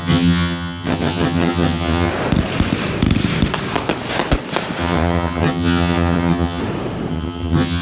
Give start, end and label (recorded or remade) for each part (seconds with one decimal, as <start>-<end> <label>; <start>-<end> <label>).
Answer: 0.0-2.1 remade; 2.1-4.8 recorded; 4.8-6.6 remade; 6.6-7.1 recorded; 7.1-7.8 remade

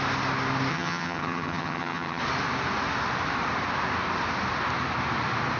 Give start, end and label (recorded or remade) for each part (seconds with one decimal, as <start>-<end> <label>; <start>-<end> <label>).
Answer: 0.0-0.7 recorded; 0.7-2.2 remade; 2.2-5.6 recorded